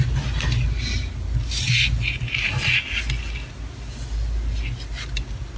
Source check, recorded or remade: recorded